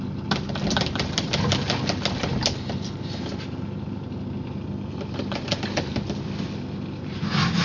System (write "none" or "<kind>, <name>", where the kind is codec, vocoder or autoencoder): none